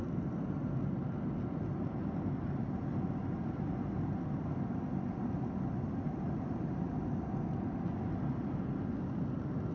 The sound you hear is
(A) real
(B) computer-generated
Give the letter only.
A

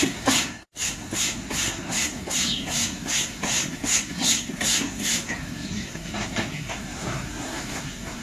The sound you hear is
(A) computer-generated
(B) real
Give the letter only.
A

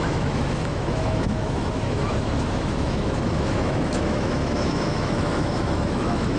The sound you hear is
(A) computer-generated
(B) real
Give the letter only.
A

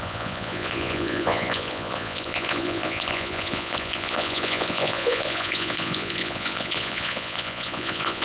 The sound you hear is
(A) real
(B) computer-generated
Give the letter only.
B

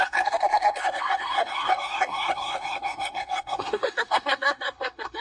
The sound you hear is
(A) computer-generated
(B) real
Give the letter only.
A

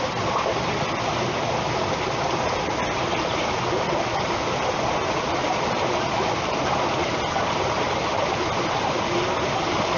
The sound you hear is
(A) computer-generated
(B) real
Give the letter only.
B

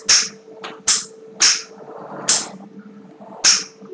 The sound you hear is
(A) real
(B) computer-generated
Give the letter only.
A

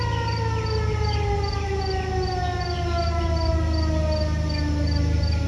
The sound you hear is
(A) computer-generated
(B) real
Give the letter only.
B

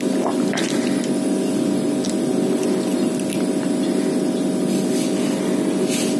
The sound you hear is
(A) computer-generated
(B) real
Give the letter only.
B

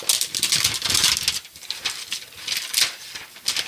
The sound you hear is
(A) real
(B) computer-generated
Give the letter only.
A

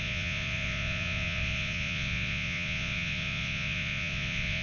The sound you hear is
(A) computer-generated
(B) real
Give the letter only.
A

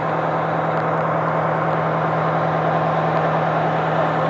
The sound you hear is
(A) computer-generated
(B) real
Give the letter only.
B